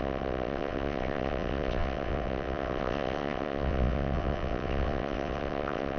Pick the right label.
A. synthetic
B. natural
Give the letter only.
A